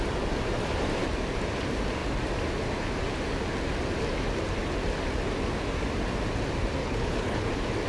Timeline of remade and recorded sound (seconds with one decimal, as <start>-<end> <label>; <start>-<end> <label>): 0.0-6.8 recorded; 6.8-7.5 remade; 7.5-7.9 recorded